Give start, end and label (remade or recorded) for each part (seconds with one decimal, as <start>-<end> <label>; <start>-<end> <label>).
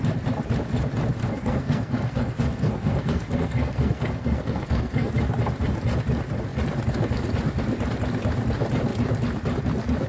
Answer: 0.0-1.2 recorded; 1.2-5.1 remade; 5.1-10.1 recorded